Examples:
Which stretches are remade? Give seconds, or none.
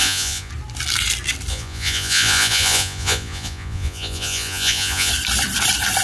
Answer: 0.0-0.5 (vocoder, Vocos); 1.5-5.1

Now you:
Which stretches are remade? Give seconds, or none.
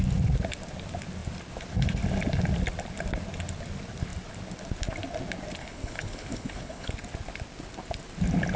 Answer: 5.6-6.9 (codec, HILCodec)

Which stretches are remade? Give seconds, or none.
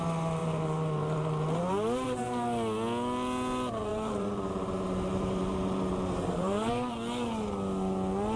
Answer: 0.4-1.7 (vocoder, BigVGAN v2); 3.9-6.9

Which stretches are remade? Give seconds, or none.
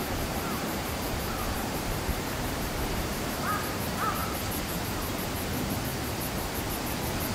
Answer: 0.0-3.6 (vocoder, BigVGAN v2); 4.2-4.8; 5.9-6.6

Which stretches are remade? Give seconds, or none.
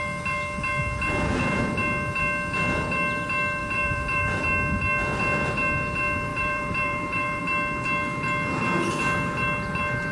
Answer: 3.6-4.4 (vocoder, BigVGAN v2); 6.3-7.4